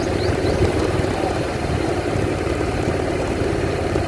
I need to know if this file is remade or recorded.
remade